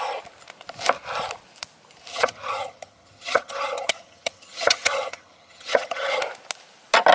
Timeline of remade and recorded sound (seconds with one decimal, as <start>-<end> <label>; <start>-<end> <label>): 0.0-2.1 recorded; 2.1-6.2 remade; 6.2-7.1 recorded

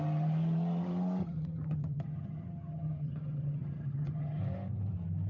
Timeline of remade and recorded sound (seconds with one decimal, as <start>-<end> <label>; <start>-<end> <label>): 0.0-1.2 recorded; 1.2-4.4 remade; 4.4-5.3 recorded

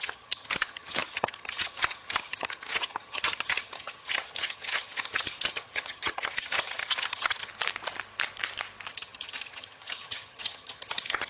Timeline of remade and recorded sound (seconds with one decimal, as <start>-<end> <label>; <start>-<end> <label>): 0.0-7.5 remade; 7.5-8.9 recorded; 8.9-11.3 remade

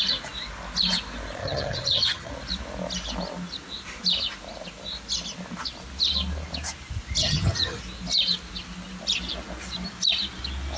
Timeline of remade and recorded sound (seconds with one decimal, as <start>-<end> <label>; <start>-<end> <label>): 0.0-1.4 recorded; 1.4-2.3 remade; 2.3-7.2 recorded; 7.2-7.8 remade; 7.8-10.8 recorded

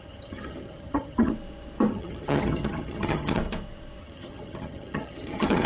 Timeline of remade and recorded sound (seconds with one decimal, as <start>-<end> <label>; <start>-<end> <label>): 0.0-1.3 remade; 1.3-1.9 recorded; 1.9-3.4 remade; 3.4-4.0 recorded; 4.0-5.7 remade

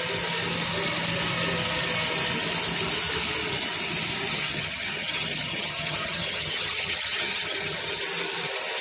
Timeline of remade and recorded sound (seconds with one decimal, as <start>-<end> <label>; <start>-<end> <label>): 0.0-4.3 recorded; 4.3-8.0 remade; 8.0-8.8 recorded